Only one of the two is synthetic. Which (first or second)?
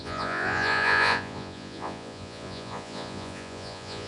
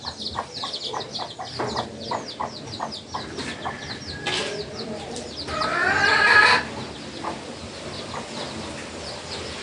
first